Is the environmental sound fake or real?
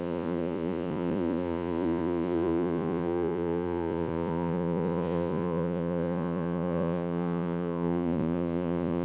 fake